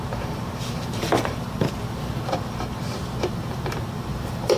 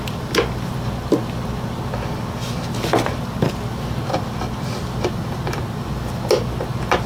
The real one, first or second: second